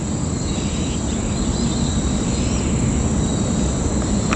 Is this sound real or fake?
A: real